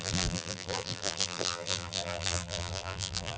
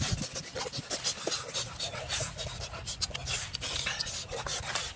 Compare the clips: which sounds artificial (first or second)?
first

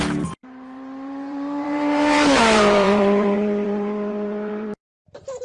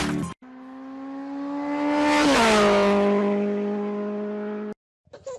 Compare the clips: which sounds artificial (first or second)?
first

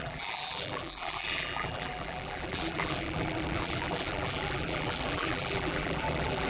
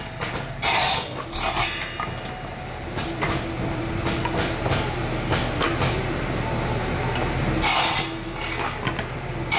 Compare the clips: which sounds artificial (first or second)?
first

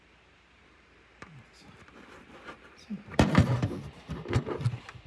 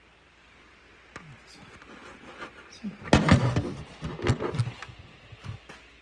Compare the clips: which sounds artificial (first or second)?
first